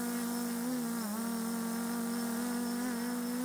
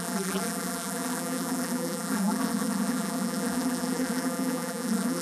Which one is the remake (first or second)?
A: second